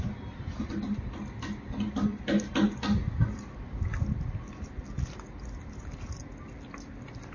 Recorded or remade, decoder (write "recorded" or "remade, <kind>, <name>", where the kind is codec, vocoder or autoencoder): recorded